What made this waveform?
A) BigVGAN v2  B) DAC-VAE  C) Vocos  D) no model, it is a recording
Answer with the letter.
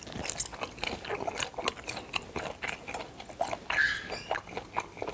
D